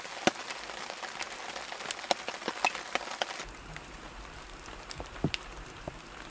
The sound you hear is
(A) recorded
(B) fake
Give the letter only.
A